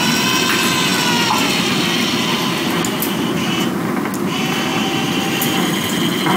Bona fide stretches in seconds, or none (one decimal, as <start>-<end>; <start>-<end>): 0.0-6.4